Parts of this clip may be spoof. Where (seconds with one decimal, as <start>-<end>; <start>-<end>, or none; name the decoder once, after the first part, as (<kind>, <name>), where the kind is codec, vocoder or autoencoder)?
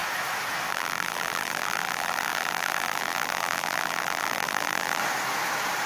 0.7-5.0 (vocoder, BigVGAN v2)